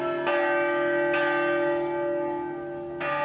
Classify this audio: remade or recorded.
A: recorded